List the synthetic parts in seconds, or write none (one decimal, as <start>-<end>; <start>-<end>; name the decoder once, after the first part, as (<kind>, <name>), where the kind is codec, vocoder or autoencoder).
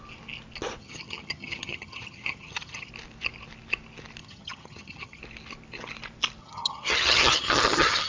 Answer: 0.8-2.9 (vocoder, HiFi-GAN); 4.2-5.2; 6.4-8.1